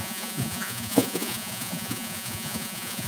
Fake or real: fake